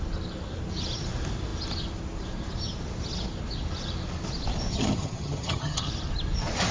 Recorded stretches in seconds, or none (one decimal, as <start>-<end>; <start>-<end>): 0.0-4.7; 5.9-6.7